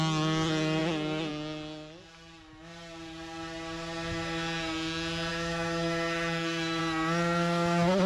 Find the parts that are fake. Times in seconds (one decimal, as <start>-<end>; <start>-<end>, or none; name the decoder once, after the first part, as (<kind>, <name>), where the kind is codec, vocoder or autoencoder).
5.3-6.8 (autoencoder, DAC-VAE)